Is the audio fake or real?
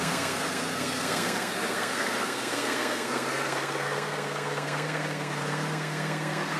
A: fake